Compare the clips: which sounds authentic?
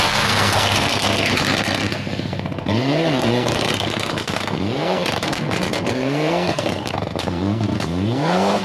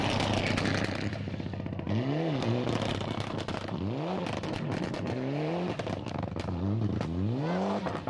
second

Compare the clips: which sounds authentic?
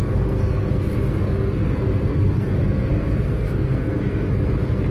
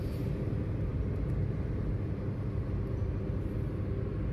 second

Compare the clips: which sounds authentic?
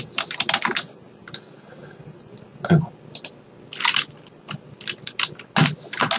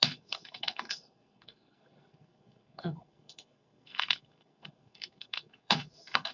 first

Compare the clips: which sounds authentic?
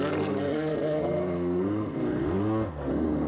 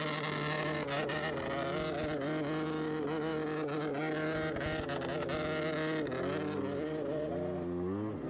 second